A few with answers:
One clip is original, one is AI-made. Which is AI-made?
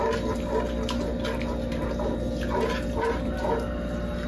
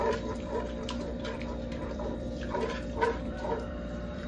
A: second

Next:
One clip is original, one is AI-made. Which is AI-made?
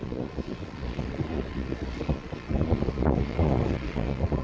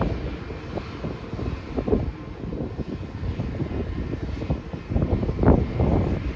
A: first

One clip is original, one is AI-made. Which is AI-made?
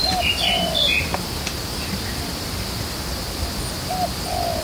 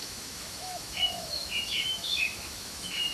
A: second